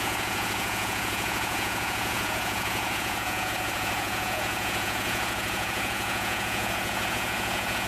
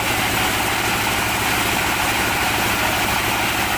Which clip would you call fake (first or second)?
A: first